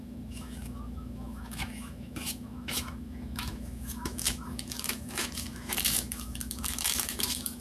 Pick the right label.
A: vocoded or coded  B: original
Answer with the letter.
A